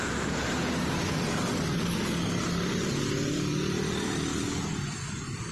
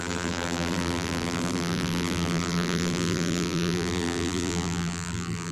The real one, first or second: first